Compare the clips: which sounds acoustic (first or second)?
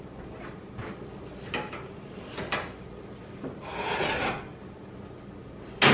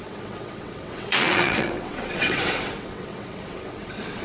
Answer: first